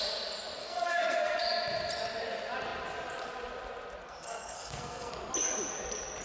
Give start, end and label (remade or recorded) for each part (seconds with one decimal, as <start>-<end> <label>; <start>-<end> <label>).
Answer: 0.0-0.6 recorded; 0.6-1.4 remade; 1.4-4.0 recorded; 4.0-5.1 remade; 5.1-6.2 recorded